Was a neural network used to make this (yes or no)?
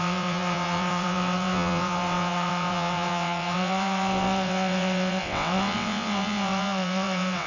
yes